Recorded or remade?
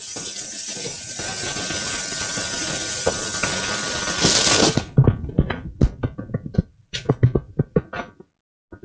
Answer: recorded